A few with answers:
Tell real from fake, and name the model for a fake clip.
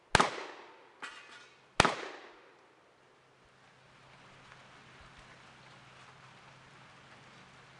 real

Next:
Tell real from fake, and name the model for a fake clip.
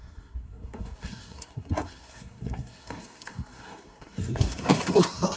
fake, codec, SNAC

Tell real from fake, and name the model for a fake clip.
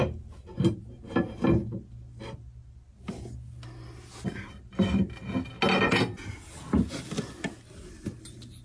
real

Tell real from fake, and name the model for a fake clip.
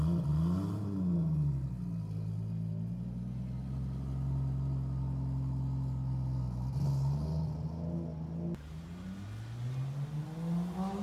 real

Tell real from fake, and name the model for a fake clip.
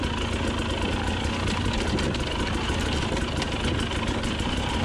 real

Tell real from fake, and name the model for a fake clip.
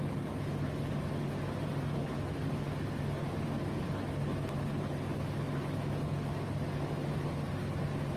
real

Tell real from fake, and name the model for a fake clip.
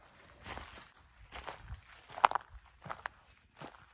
real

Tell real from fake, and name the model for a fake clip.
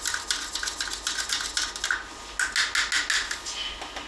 real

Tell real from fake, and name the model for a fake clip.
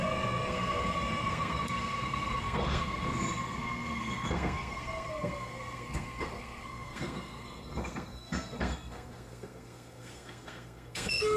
fake, codec, SNAC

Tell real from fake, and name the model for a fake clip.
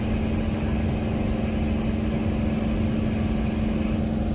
real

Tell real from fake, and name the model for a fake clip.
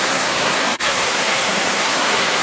fake, codec, SNAC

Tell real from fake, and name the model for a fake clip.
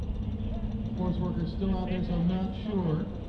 real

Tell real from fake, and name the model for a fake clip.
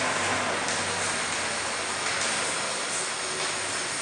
real